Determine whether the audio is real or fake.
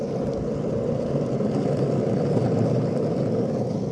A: real